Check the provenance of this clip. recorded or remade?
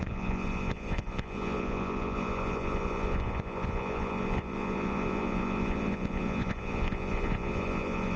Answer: remade